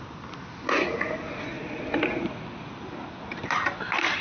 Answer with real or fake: real